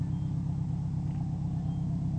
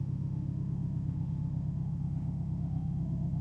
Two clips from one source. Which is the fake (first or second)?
second